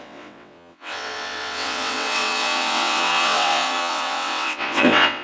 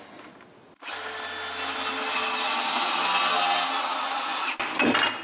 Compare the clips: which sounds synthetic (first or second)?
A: first